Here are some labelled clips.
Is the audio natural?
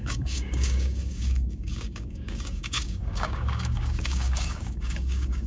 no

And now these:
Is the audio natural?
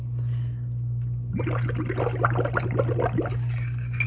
yes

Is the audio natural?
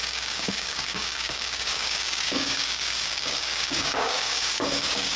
no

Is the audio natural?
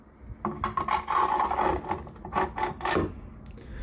yes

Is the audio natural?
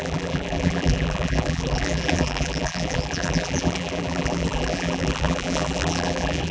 no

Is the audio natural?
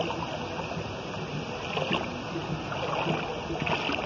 yes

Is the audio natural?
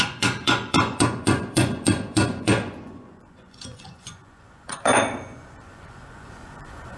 no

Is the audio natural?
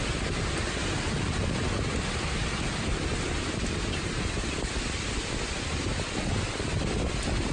yes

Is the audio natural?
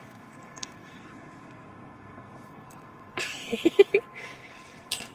no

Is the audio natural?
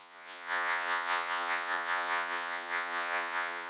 no